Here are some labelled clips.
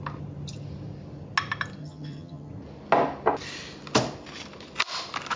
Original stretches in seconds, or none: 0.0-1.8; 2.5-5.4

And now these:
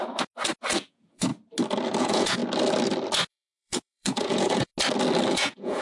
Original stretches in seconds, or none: 0.0-0.7; 1.3-2.0; 2.4-3.3; 4.7-5.3

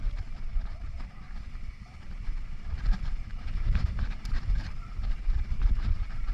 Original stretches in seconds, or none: none

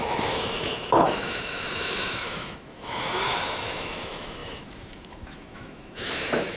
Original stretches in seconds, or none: none

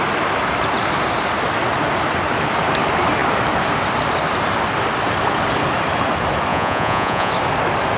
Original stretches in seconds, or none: 0.0-6.5; 7.3-8.0

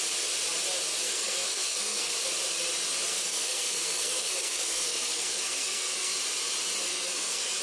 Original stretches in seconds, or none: 0.0-1.0; 2.1-3.1; 6.1-6.9

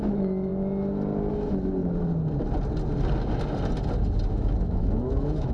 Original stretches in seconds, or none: 0.5-1.3; 1.8-4.3